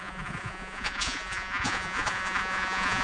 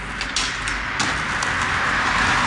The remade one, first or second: first